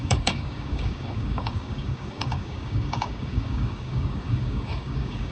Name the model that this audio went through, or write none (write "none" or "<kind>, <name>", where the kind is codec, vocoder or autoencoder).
codec, DAC